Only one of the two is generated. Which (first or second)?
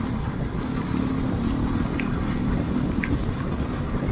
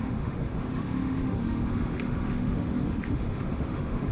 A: second